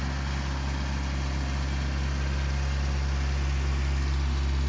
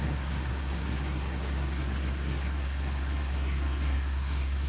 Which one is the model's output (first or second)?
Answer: second